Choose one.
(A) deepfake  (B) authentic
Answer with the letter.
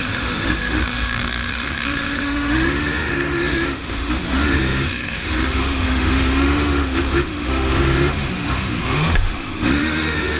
A